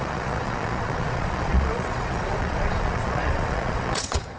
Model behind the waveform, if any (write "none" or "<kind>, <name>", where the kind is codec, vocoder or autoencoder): vocoder, Vocos